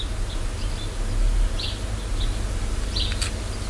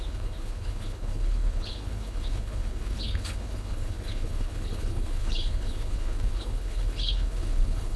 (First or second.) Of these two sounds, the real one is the first